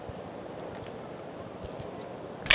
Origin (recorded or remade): recorded